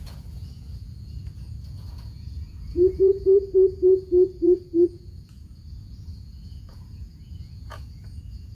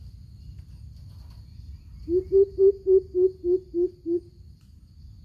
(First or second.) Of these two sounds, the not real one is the first